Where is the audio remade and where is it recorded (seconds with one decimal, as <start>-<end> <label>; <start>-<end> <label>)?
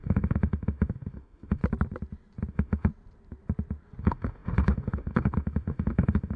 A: 0.0-1.6 remade; 1.6-2.5 recorded; 2.5-2.9 remade; 2.9-4.0 recorded; 4.0-6.4 remade